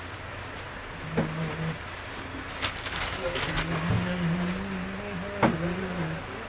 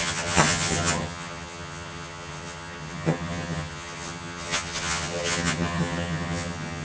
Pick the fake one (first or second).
second